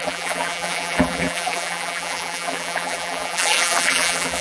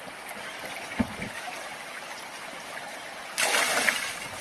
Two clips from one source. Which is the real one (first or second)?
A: second